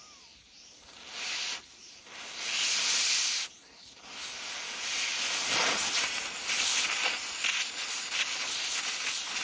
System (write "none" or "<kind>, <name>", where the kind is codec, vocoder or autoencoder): none